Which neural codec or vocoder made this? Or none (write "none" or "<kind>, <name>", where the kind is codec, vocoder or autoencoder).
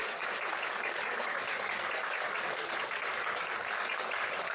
codec, DAC